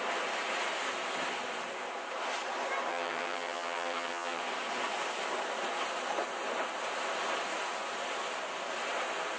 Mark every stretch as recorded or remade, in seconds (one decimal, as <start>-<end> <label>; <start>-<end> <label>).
0.0-2.9 recorded; 2.9-4.4 remade; 4.4-9.4 recorded